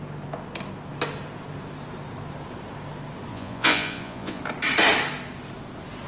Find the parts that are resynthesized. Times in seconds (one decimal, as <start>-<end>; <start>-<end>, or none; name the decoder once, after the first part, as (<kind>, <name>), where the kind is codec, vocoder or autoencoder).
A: 3.3-4.4 (vocoder, Vocos)